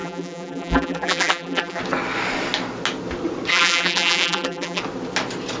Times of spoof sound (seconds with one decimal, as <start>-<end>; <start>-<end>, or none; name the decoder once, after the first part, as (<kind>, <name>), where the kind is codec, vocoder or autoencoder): 0.0-1.8 (vocoder, BigVGAN v2); 3.5-4.8